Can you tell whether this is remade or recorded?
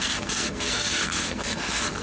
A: remade